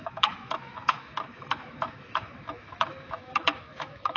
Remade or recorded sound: remade